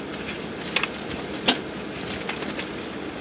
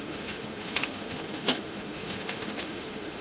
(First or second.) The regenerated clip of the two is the second